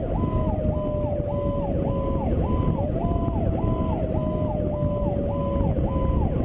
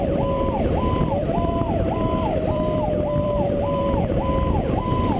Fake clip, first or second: second